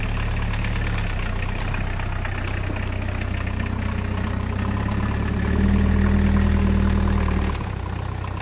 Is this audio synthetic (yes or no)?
no